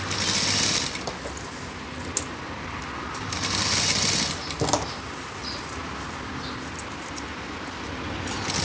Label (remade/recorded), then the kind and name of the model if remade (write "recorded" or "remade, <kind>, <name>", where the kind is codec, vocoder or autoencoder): recorded